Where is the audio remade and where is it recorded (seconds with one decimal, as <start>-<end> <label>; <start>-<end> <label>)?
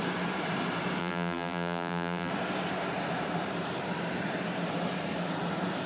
0.0-1.0 recorded; 1.0-2.3 remade; 2.3-5.9 recorded